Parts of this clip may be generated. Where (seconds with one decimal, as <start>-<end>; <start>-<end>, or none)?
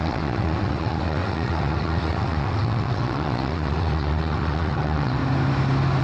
0.0-5.2